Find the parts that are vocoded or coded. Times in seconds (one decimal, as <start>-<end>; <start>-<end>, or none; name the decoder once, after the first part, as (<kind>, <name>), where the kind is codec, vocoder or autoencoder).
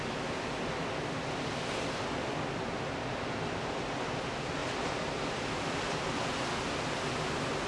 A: 4.6-6.2 (vocoder, BigVGAN v2)